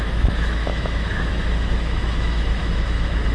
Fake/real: fake